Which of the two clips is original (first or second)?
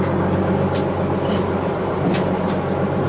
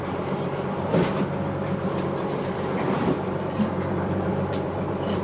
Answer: first